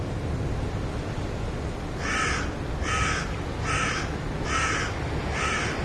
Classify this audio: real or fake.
real